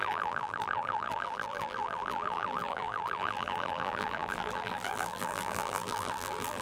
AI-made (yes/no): yes